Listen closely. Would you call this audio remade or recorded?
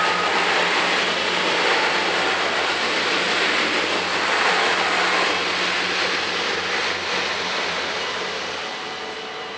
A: recorded